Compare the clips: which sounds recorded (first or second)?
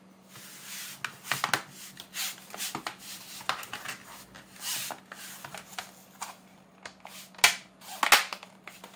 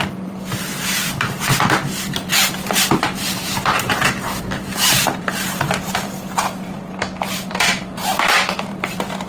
first